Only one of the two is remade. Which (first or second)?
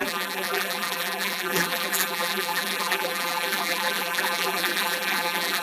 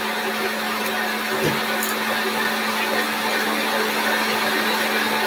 first